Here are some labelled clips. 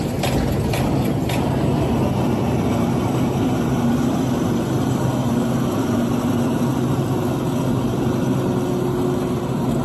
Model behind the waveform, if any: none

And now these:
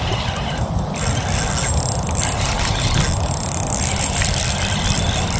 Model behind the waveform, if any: none